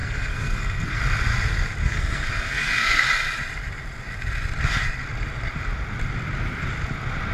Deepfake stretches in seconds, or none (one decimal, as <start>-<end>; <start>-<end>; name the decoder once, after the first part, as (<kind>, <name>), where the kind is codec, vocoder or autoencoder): 0.0-1.0 (codec, SNAC); 1.8-3.0